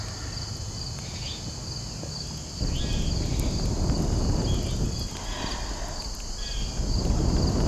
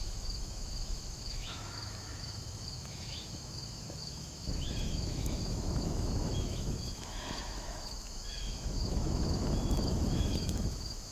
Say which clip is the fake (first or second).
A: second